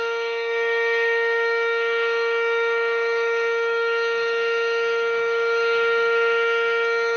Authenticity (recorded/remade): remade